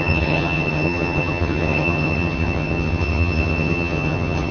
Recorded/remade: remade